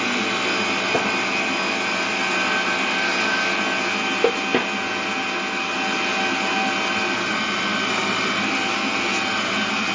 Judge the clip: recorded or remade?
recorded